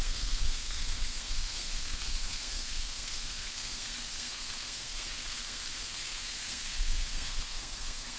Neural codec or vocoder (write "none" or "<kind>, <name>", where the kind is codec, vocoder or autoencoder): codec, SNAC